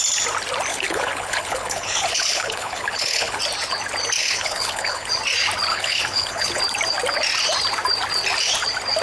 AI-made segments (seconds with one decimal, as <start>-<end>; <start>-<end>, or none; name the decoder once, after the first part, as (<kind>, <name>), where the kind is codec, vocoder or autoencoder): 0.7-3.4 (codec, HILCodec); 4.2-5.1; 5.7-6.6